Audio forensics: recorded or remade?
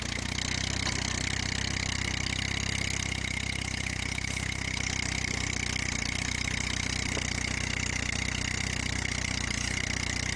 recorded